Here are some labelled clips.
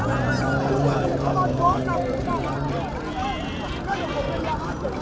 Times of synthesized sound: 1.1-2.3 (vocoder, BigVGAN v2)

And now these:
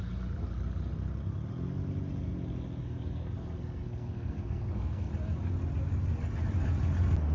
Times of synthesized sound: 2.8-5.1 (codec, SNAC)

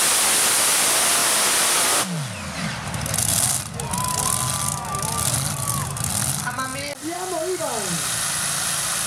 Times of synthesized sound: none